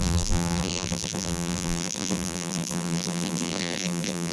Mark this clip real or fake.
fake